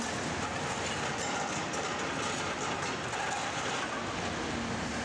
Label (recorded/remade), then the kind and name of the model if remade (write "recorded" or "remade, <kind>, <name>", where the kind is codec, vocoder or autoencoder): recorded